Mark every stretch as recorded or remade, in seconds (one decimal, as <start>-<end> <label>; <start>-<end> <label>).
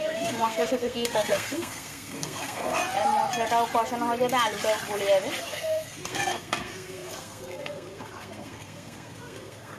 0.0-2.8 remade; 2.8-5.4 recorded; 5.4-9.8 remade